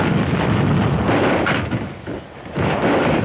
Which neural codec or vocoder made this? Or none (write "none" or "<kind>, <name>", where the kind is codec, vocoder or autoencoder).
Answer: none